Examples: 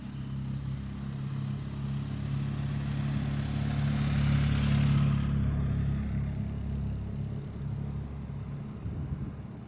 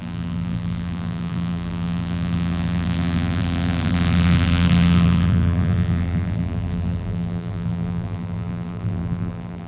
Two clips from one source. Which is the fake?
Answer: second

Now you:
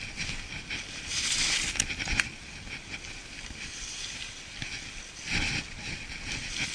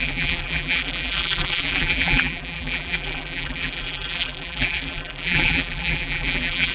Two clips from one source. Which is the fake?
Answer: second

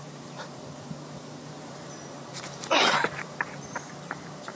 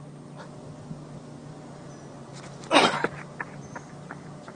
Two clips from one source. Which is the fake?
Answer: first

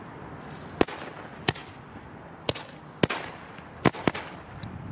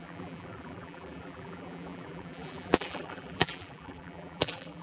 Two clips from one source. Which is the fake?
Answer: second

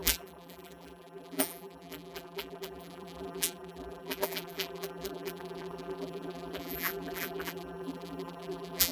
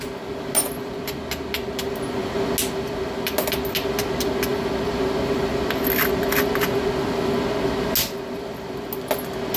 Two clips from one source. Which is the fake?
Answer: first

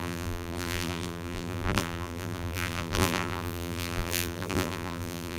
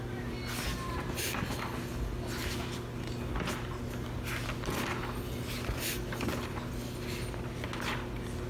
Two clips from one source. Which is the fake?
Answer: first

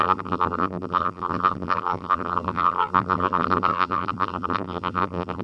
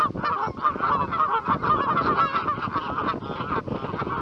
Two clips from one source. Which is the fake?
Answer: first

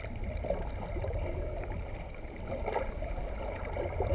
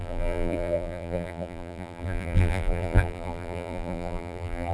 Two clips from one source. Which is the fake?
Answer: second